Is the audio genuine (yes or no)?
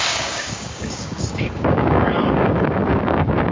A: no